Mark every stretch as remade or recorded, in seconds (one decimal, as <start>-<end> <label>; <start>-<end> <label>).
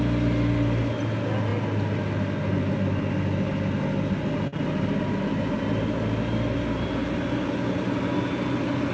0.0-8.9 recorded